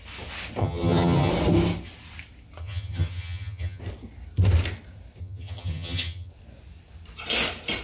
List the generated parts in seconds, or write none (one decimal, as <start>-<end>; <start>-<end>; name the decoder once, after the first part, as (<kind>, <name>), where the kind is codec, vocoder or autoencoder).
0.6-1.3 (vocoder, HiFi-GAN); 2.6-3.8; 5.2-6.3